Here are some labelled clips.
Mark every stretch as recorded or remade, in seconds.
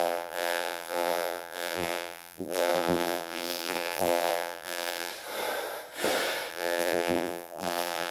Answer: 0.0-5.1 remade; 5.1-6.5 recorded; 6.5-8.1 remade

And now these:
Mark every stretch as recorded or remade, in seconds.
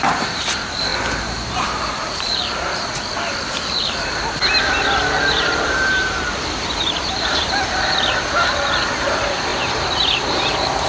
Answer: 0.0-2.9 remade; 2.9-3.5 recorded; 3.5-9.5 remade; 9.5-10.0 recorded; 10.0-10.9 remade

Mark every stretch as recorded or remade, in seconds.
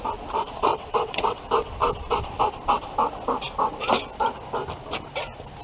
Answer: 0.0-0.7 recorded; 0.7-1.4 remade; 1.4-5.6 recorded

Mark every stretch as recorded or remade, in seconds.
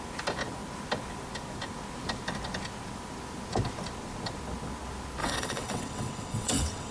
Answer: 0.0-5.2 recorded; 5.2-6.9 remade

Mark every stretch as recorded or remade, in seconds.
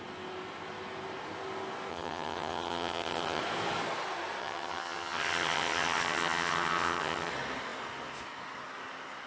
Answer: 0.0-1.9 recorded; 1.9-3.4 remade; 3.4-4.4 recorded; 4.4-7.3 remade; 7.3-9.3 recorded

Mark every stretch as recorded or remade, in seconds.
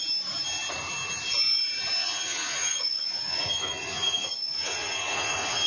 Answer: 0.0-2.0 recorded; 2.0-5.7 remade